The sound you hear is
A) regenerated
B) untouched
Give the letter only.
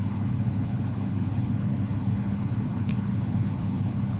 A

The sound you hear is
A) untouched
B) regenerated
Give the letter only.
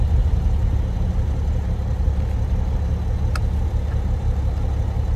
A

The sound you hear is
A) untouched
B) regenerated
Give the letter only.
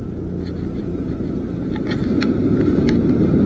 A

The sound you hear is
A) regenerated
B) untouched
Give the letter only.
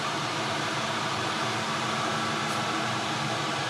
A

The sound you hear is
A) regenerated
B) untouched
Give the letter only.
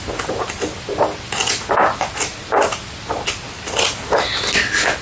B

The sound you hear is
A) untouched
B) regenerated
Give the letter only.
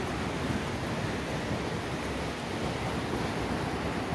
A